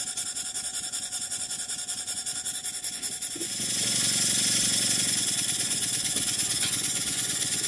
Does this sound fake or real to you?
fake